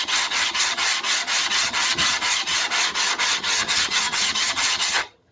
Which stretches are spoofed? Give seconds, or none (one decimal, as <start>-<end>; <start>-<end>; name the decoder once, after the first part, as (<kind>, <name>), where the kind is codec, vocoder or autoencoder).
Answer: 0.0-0.9 (vocoder, HiFi-GAN); 1.5-2.5; 3.3-5.3